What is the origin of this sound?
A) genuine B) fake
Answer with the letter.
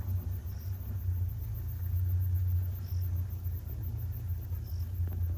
A